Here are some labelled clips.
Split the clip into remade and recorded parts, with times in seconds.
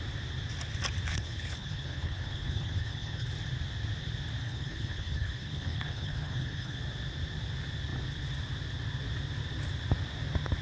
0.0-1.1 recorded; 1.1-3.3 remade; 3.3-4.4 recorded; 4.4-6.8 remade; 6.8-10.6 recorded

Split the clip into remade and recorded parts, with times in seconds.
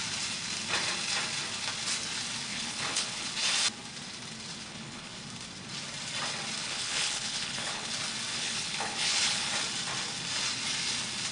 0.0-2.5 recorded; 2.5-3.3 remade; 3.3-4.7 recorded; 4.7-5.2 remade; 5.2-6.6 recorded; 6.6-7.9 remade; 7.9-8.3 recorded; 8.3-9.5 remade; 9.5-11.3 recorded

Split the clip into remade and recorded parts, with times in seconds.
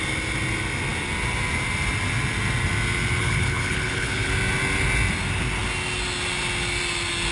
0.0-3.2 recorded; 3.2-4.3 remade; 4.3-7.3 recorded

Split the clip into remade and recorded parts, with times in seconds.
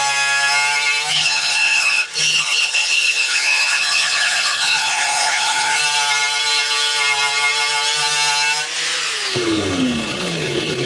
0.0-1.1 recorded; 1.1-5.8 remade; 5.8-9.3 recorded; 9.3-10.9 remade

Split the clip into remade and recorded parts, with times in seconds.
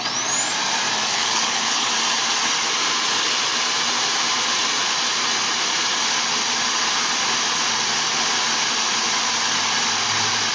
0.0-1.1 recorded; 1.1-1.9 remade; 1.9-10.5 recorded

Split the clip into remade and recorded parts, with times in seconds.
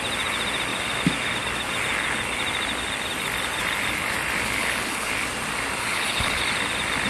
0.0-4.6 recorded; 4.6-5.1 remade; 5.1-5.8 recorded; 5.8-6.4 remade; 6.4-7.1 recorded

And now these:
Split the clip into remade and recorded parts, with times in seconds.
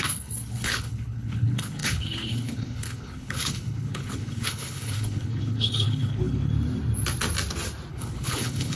0.0-6.5 remade; 6.5-7.9 recorded; 7.9-8.8 remade